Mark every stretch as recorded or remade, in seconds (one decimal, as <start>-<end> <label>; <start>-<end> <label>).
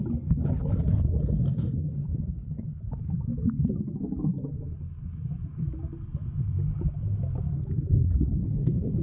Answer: 0.0-1.9 recorded; 1.9-2.8 remade; 2.8-8.4 recorded; 8.4-9.0 remade